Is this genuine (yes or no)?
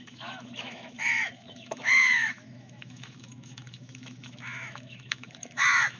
no